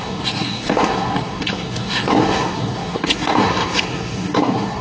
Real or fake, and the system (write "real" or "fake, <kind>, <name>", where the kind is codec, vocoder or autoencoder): fake, codec, SNAC